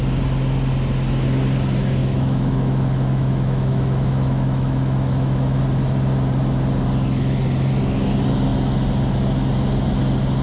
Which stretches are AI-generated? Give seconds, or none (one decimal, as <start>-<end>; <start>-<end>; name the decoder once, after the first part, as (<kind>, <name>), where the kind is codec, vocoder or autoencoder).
2.0-5.6 (autoencoder, DAC-VAE)